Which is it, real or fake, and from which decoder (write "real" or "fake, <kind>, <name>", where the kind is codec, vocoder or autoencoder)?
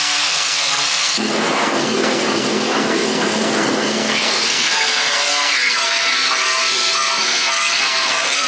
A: fake, codec, SNAC